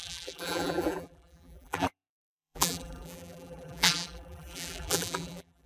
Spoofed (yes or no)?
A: yes